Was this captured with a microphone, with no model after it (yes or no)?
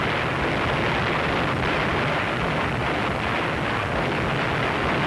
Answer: yes